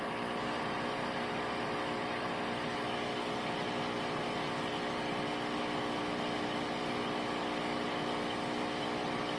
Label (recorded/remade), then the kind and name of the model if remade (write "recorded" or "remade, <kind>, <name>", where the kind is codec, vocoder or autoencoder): recorded